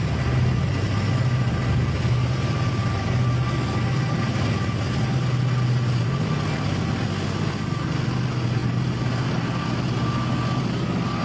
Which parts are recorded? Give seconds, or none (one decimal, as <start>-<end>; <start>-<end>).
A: 0.0-11.2